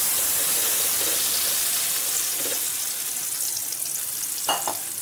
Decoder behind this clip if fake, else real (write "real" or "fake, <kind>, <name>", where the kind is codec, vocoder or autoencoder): real